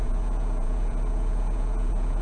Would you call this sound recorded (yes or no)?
no